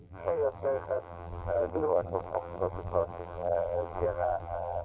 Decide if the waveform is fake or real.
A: fake